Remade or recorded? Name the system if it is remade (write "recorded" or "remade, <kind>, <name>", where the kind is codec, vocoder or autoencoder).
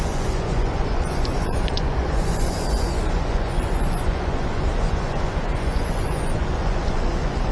remade, vocoder, Vocos